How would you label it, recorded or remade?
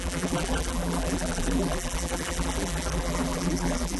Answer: remade